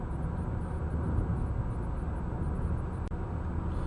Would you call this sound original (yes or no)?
yes